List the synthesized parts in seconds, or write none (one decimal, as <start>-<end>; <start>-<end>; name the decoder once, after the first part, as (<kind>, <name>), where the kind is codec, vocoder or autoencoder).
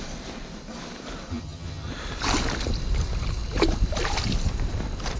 1.3-1.9 (vocoder, HiFi-GAN)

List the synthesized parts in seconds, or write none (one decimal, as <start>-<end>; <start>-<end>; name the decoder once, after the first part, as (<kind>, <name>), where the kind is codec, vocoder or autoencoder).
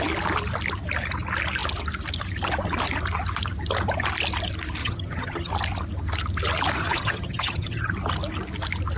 4.8-5.5 (vocoder, HiFi-GAN); 6.8-7.9